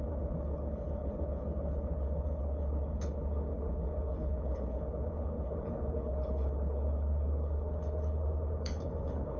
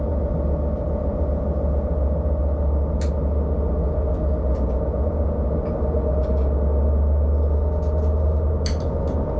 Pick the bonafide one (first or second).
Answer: second